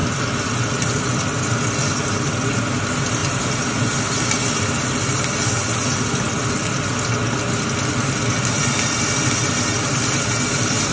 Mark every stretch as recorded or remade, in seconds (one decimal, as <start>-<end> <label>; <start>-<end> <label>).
0.0-10.9 recorded